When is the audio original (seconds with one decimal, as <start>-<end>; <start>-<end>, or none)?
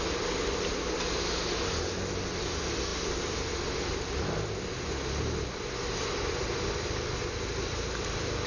0.0-8.5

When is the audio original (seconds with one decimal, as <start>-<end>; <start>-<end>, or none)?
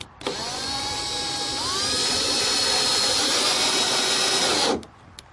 0.0-0.4; 0.9-2.0; 4.3-5.3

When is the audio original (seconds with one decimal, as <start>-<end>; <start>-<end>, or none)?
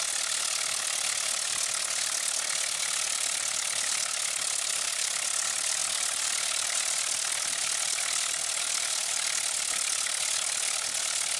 0.0-11.4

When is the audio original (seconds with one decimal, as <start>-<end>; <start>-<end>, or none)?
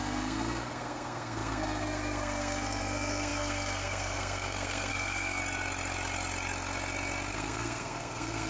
5.4-7.3